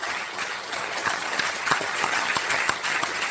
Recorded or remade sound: remade